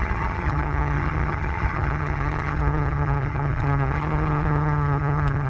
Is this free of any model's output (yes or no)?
no